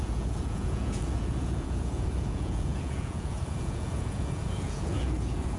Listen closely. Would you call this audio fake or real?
fake